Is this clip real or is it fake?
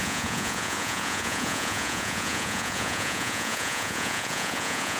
fake